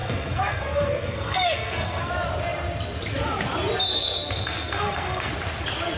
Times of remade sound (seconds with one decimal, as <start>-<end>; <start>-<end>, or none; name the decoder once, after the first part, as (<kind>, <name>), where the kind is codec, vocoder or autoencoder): 0.0-2.1 (codec, SNAC); 3.9-5.3